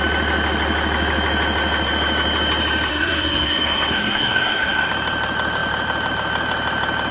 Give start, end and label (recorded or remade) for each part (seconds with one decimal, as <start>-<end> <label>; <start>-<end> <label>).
0.0-2.9 recorded; 2.9-4.9 remade; 4.9-7.1 recorded